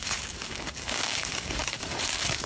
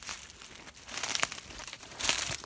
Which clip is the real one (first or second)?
second